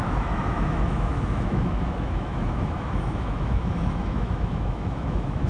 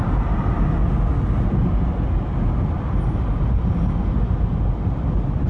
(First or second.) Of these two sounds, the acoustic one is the second